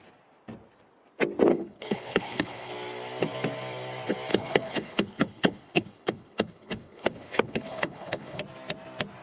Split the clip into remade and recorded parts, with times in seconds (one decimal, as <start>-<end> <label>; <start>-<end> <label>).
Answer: 0.0-1.5 recorded; 1.5-2.7 remade; 2.7-4.3 recorded; 4.3-8.4 remade; 8.4-9.2 recorded